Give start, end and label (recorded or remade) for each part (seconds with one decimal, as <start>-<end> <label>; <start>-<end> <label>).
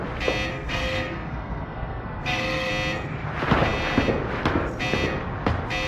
0.0-0.5 recorded; 0.5-2.7 remade; 2.7-5.9 recorded